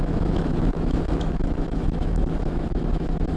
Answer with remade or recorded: remade